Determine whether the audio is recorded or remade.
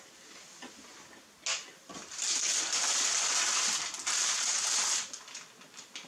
recorded